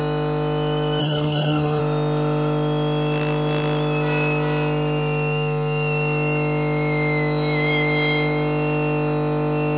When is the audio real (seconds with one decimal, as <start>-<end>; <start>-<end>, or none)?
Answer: 0.0-1.0; 1.8-9.8